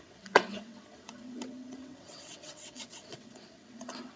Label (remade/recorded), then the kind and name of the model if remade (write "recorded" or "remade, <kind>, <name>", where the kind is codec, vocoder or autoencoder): remade, vocoder, WaveNeXt